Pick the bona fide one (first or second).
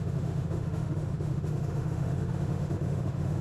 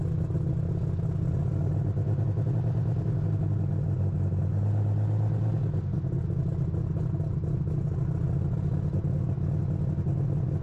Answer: second